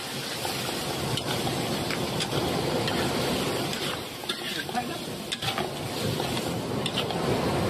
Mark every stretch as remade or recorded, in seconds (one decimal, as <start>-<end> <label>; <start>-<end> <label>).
0.0-3.7 recorded; 3.7-4.3 remade; 4.3-7.7 recorded